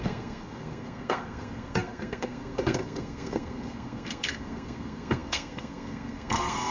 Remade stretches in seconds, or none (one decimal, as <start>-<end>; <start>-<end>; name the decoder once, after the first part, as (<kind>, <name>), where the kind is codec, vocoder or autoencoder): 0.0-6.7 (codec, SNAC)